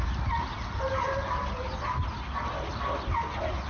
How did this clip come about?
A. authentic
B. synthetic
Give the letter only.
A